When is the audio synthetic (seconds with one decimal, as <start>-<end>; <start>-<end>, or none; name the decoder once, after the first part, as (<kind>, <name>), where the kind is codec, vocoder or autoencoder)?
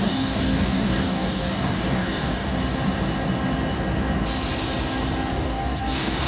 0.0-2.6 (codec, DAC); 5.3-6.3